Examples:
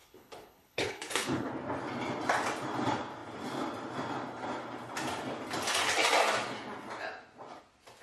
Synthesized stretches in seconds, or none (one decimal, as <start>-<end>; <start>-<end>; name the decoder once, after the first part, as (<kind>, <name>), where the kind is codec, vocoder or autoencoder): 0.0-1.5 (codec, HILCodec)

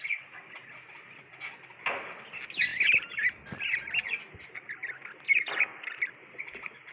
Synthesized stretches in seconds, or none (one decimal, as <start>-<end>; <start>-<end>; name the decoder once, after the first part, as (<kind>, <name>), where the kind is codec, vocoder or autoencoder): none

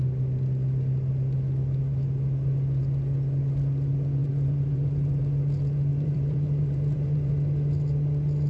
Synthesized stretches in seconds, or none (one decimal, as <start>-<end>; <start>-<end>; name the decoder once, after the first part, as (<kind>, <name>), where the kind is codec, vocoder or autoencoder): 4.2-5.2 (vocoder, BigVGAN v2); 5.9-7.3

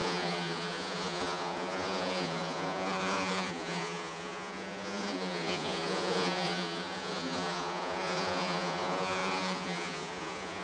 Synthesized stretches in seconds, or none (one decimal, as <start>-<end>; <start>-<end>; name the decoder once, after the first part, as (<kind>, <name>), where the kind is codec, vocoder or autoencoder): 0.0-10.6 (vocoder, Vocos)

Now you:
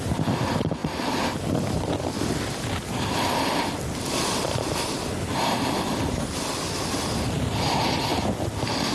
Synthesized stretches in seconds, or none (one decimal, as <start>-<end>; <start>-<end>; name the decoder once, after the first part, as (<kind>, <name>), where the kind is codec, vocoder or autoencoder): 0.0-8.1 (vocoder, BigVGAN v2)

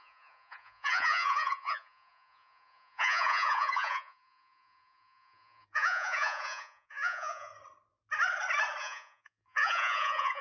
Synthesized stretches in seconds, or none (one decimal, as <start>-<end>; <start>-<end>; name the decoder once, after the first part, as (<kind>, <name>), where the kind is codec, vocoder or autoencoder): 0.0-7.5 (vocoder, Vocos); 8.8-10.4

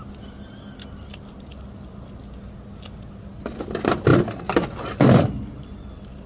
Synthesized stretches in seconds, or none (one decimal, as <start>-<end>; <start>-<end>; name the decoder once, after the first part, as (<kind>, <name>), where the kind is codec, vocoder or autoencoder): none

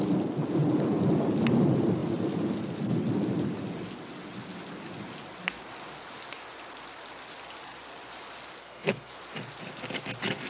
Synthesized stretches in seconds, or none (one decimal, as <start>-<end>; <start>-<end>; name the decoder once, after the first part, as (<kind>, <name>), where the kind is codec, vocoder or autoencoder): 8.6-9.1 (codec, SNAC)